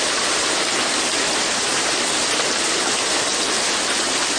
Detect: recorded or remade recorded